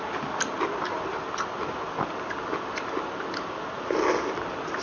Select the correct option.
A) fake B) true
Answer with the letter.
B